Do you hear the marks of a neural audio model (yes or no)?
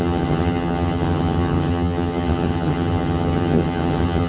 yes